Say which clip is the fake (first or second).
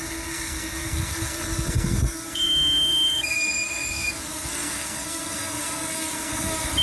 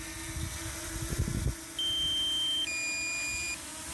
first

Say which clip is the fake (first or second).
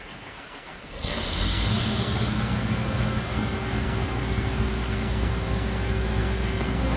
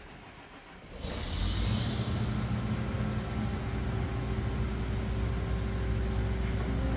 first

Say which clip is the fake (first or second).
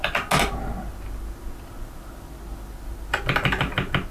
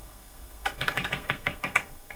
second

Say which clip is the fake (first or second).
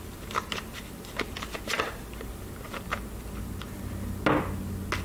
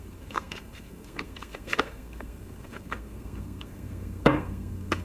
second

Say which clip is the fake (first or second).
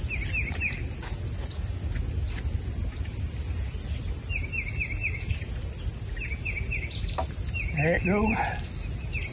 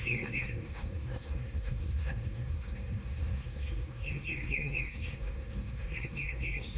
second